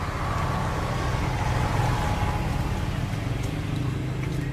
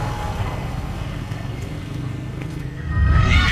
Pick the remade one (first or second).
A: second